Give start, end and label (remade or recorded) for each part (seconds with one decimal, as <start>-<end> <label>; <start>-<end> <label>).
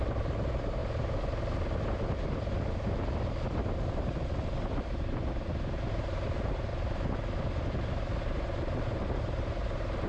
0.0-0.8 remade; 0.8-5.9 recorded; 5.9-6.7 remade; 6.7-8.2 recorded; 8.2-10.1 remade